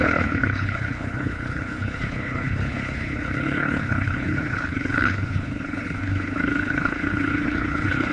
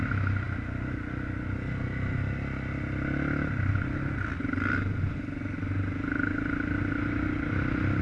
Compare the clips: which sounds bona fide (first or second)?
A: second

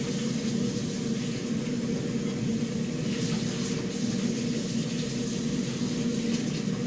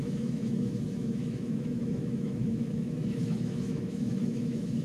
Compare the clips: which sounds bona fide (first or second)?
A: first